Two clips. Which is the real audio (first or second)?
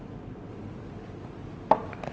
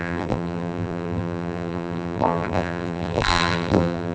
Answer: first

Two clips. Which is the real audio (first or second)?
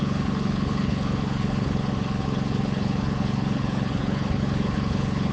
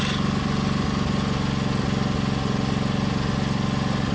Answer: second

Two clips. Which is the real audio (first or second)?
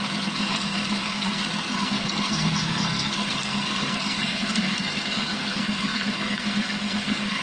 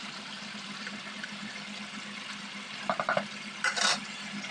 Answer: second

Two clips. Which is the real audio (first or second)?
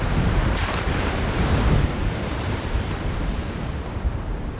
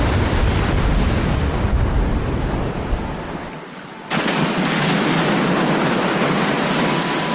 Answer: second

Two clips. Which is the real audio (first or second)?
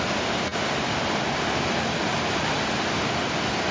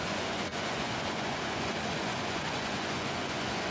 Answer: first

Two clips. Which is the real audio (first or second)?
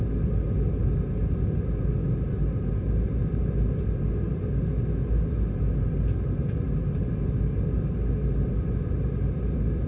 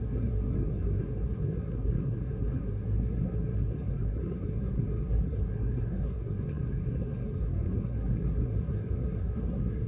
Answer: first